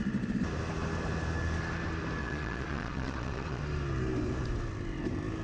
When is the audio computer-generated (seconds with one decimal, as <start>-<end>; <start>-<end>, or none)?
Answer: 2.2-3.6